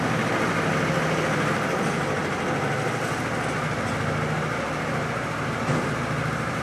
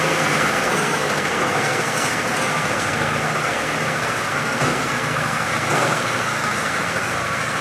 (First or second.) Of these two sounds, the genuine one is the first